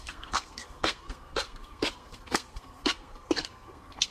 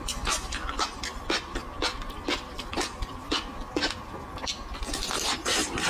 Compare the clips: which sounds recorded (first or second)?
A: second